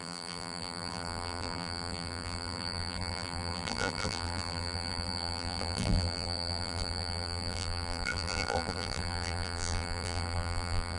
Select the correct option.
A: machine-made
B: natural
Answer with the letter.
A